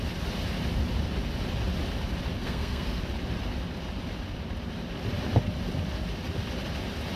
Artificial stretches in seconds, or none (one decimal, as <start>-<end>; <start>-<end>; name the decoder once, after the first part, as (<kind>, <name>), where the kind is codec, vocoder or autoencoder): 2.4-3.0 (codec, SNAC)

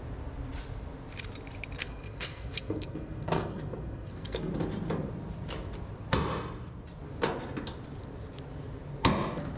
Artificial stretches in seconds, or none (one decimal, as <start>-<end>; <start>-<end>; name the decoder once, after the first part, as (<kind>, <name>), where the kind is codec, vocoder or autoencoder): 1.8-4.5 (codec, SNAC)

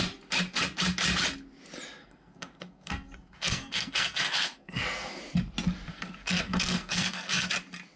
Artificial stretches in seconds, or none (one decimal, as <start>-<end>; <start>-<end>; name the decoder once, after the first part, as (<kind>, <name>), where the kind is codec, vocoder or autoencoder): 2.0-5.2 (codec, SNAC); 5.9-7.5

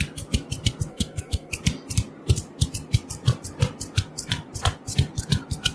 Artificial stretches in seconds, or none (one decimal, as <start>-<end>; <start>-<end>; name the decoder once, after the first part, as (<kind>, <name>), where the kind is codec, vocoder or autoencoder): 0.9-1.5 (codec, SNAC)